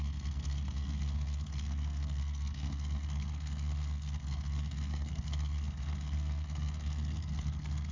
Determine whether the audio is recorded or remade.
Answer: remade